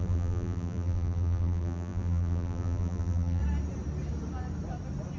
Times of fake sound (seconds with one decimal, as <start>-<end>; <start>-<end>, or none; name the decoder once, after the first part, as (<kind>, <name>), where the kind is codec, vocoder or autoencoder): 0.0-3.4 (vocoder, BigVGAN v2)